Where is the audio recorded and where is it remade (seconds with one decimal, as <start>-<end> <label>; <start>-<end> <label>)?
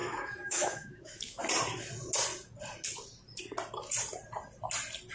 0.0-1.4 remade; 1.4-5.1 recorded